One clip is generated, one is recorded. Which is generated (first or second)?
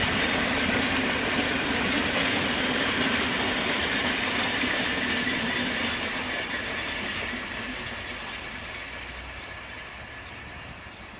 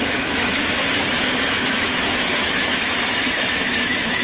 second